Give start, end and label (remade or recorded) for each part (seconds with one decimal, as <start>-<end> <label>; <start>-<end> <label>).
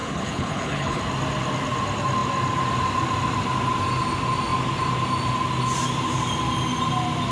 0.0-1.0 remade; 1.0-7.3 recorded